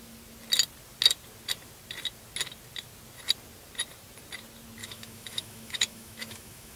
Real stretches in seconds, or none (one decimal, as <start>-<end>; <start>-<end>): 0.0-4.8

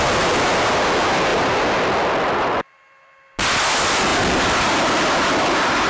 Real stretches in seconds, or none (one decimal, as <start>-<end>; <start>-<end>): 0.0-5.9

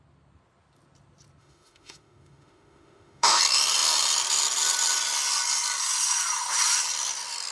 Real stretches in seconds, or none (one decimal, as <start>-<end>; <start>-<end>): 0.0-1.4; 3.4-7.5

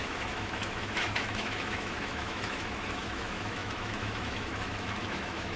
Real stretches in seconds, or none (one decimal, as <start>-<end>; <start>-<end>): none

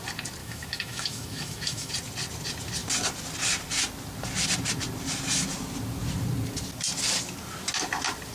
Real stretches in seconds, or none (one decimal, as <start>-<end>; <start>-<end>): 0.0-0.4; 1.9-8.3